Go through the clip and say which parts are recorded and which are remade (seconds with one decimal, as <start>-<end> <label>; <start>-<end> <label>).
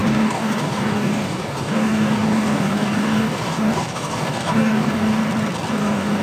0.0-5.2 remade; 5.2-5.7 recorded; 5.7-6.2 remade